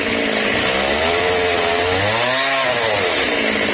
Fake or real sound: real